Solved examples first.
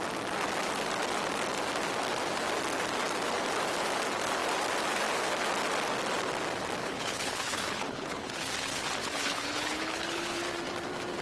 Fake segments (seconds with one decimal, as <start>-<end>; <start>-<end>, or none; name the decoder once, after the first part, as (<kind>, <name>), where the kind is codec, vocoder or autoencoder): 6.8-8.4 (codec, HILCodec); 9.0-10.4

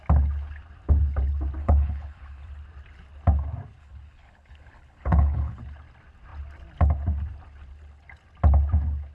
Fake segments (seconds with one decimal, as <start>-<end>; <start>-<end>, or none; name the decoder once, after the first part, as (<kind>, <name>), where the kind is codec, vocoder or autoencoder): 1.6-2.5 (codec, HILCodec); 3.8-5.6

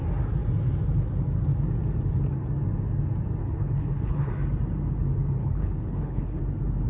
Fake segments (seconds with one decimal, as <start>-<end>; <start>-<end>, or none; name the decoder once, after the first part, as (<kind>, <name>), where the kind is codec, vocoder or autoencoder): 3.4-4.3 (codec, HILCodec); 5.4-6.4